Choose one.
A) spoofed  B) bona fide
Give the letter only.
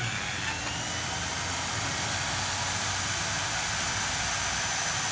B